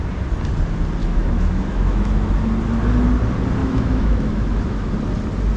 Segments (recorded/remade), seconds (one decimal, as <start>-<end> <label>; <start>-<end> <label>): 0.0-1.0 recorded; 1.0-2.3 remade; 2.3-3.6 recorded; 3.6-4.9 remade; 4.9-5.6 recorded